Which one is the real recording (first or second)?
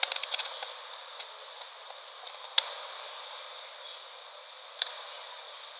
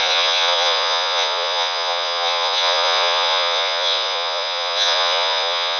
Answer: first